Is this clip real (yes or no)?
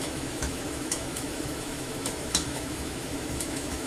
no